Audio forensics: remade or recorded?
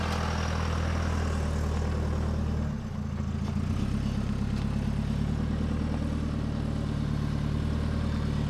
recorded